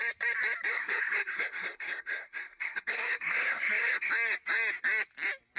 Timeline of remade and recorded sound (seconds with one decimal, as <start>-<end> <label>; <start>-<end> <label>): 0.0-0.7 recorded; 0.7-4.1 remade; 4.1-5.6 recorded